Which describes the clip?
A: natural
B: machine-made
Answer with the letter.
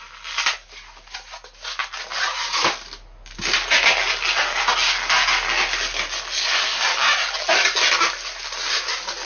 A